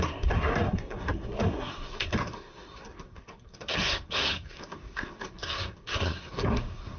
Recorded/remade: remade